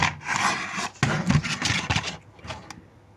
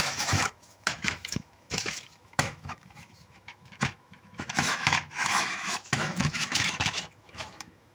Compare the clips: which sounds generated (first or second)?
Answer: second